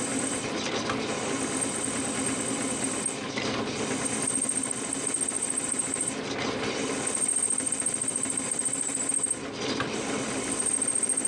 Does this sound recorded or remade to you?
recorded